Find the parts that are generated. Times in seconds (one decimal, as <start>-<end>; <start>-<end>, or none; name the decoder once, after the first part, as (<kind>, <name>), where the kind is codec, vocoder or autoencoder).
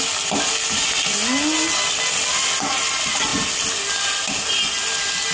none